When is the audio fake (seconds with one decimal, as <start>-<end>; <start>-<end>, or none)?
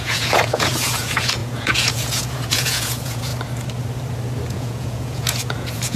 0.0-3.3; 4.5-6.0